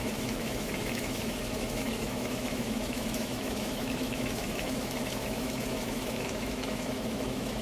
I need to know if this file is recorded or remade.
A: remade